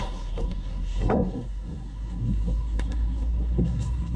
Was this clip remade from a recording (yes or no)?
yes